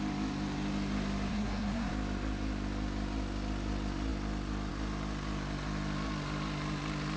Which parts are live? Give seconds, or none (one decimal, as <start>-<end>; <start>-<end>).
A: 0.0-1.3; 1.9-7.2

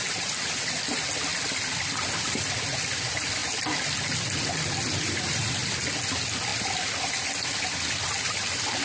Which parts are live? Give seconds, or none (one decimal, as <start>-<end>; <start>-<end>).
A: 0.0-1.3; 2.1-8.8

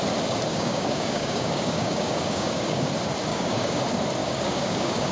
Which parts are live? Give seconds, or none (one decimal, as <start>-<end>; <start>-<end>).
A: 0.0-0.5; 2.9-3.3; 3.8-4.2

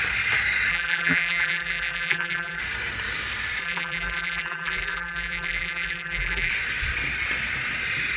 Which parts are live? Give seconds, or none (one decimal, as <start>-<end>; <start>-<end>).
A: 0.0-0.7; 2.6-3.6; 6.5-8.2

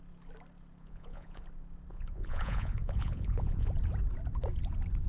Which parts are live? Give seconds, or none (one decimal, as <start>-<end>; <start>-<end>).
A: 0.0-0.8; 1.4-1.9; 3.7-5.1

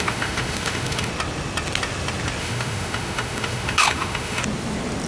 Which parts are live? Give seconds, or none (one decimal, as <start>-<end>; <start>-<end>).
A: 1.1-2.4; 4.4-5.1

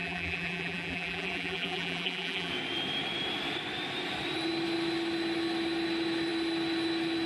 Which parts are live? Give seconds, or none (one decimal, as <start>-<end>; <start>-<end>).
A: 2.5-7.3